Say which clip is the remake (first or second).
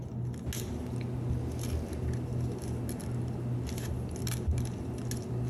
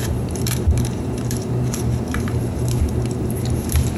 second